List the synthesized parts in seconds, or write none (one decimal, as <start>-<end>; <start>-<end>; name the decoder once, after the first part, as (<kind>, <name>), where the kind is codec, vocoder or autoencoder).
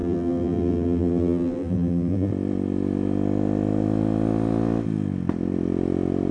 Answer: 0.0-2.3 (vocoder, BigVGAN v2)